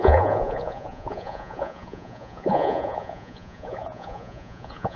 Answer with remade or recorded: remade